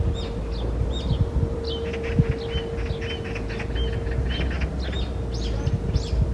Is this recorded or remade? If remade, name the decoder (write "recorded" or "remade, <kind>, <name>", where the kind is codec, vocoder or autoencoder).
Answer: recorded